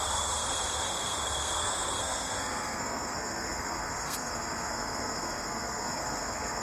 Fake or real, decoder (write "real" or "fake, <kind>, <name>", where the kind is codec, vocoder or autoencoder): fake, codec, SNAC